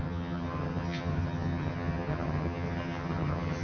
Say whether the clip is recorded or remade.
remade